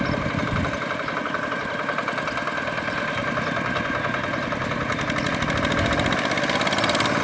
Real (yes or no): yes